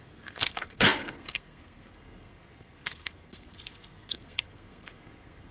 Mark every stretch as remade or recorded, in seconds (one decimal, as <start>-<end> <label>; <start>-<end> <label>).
0.0-5.5 remade